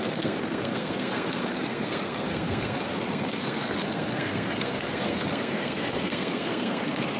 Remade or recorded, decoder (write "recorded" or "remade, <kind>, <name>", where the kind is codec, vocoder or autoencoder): remade, codec, SNAC